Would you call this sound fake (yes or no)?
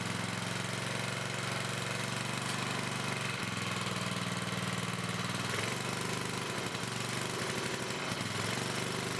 no